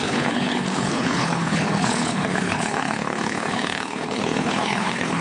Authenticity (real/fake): fake